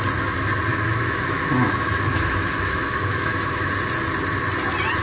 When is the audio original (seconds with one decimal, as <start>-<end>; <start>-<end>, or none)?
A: 0.0-0.7; 3.7-5.0